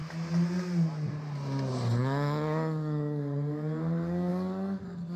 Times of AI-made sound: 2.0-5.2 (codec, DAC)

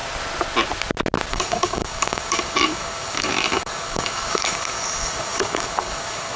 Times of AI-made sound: 1.3-6.4 (codec, DAC)

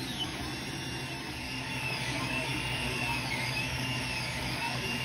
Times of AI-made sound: 0.0-0.4 (codec, DAC); 1.3-5.0

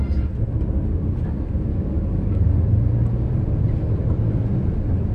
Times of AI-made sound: 1.7-2.7 (codec, DAC)

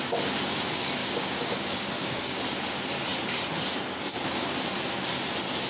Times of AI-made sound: 1.0-2.4 (codec, DAC)

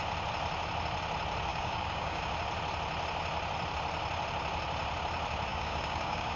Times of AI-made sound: 1.5-2.2 (codec, DAC); 5.5-6.4

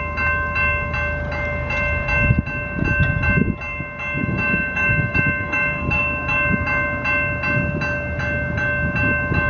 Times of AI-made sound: 4.2-6.0 (codec, DAC)